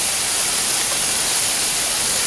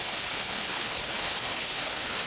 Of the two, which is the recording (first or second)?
first